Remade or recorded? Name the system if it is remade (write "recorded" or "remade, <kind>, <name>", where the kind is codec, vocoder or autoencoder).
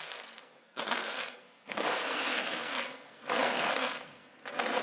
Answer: remade, codec, SNAC